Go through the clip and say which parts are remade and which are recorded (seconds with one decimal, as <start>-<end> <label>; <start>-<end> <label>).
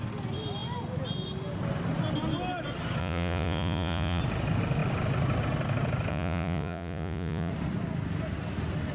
0.0-3.0 recorded; 3.0-4.2 remade; 4.2-6.1 recorded; 6.1-7.5 remade; 7.5-8.9 recorded